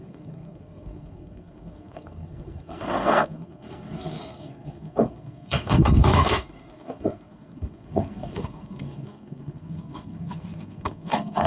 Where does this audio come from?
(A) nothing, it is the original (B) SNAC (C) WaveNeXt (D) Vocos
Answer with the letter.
B